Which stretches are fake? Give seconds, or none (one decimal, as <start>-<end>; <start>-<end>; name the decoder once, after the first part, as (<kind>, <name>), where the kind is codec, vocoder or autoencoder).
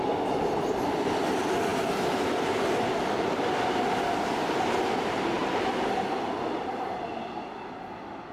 none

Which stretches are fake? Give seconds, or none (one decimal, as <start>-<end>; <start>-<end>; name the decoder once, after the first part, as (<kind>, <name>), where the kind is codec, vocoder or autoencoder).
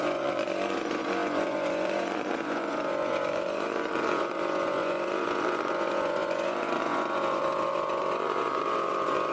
0.0-9.3 (vocoder, Vocos)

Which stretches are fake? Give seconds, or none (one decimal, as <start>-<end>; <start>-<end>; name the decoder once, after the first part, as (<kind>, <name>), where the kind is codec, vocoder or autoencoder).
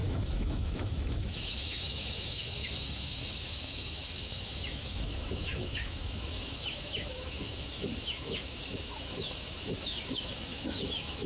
0.0-11.3 (autoencoder, DAC-VAE)